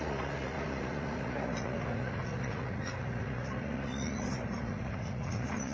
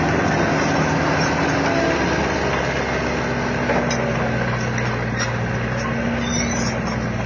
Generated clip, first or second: first